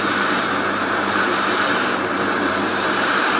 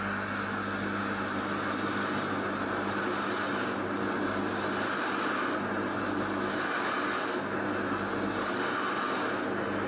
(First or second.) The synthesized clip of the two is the first